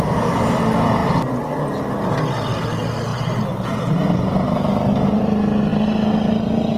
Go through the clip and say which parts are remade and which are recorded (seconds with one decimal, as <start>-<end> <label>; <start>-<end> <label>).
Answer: 0.0-3.1 recorded; 3.1-3.8 remade; 3.8-6.8 recorded